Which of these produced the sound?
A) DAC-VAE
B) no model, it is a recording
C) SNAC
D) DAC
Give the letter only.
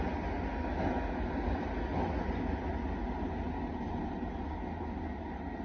B